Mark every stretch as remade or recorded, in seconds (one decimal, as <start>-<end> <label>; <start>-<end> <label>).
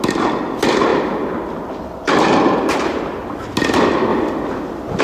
0.0-0.9 recorded; 0.9-3.4 remade; 3.4-5.0 recorded